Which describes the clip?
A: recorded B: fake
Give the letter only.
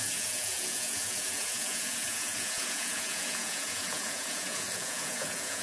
B